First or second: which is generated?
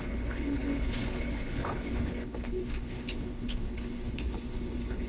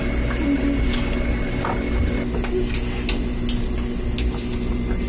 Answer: first